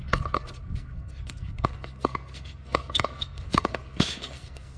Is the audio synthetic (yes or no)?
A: yes